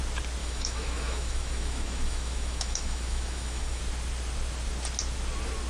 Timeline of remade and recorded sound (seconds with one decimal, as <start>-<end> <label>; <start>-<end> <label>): 0.0-0.4 recorded; 0.4-3.8 remade; 3.8-5.7 recorded